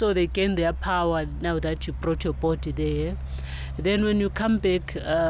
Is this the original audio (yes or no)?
yes